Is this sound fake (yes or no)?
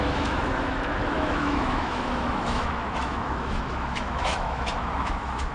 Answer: yes